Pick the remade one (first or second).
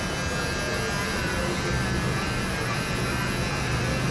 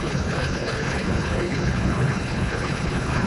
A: second